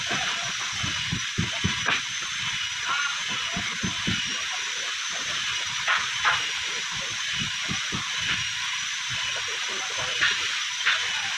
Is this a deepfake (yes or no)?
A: no